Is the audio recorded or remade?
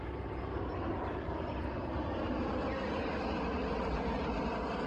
recorded